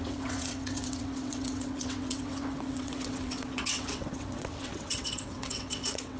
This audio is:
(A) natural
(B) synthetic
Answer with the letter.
B